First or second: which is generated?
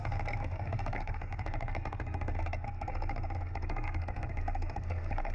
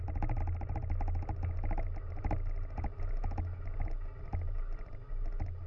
first